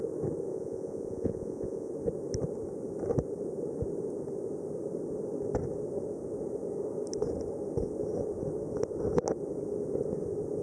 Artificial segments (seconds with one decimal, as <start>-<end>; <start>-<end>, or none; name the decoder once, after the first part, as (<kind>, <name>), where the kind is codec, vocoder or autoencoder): 0.5-1.9 (vocoder, Vocos)

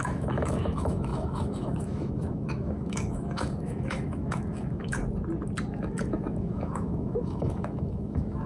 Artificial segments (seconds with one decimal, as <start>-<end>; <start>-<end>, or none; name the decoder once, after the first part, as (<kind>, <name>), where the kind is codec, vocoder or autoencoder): 0.0-5.0 (autoencoder, DAC-VAE); 5.7-8.5

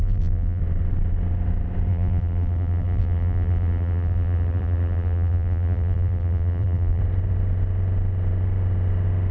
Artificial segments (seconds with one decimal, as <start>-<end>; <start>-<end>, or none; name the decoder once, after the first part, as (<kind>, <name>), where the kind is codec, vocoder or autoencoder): 0.0-0.6 (vocoder, BigVGAN v2); 1.9-7.0

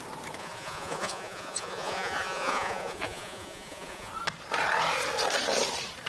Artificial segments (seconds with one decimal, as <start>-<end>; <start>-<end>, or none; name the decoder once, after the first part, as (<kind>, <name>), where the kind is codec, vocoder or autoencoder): 0.4-4.1 (vocoder, Vocos)

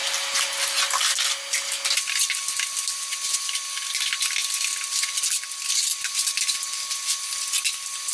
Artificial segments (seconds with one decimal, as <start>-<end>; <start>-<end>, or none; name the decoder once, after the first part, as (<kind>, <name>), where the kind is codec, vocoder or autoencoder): none

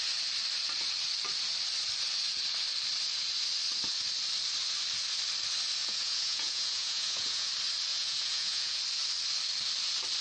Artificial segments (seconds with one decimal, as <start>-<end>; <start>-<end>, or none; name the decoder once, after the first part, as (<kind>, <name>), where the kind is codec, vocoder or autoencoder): 5.8-7.5 (vocoder, Vocos); 7.9-8.8